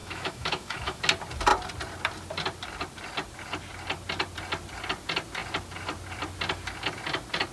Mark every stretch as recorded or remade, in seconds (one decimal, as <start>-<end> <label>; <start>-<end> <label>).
0.0-1.0 remade; 1.0-7.5 recorded